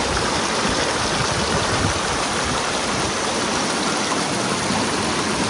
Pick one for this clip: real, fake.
real